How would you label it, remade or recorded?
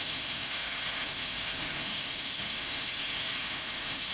remade